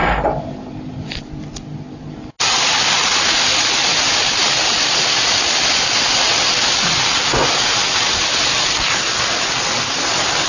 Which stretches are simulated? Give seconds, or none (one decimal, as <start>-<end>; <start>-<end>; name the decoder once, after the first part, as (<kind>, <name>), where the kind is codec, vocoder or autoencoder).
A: none